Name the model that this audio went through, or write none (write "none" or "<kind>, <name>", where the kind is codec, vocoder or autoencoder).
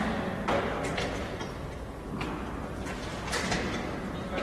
none